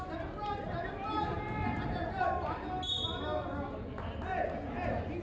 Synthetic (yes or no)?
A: no